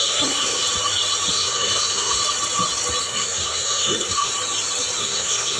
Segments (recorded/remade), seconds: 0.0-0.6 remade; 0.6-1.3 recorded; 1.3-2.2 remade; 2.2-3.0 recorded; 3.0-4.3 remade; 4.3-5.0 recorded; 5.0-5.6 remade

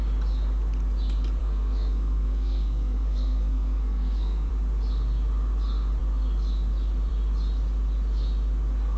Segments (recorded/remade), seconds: 0.0-1.4 recorded; 1.4-4.5 remade; 4.5-9.0 recorded

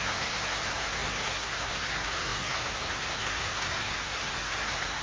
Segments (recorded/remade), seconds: 0.0-5.0 remade